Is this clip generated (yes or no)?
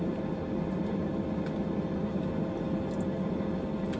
no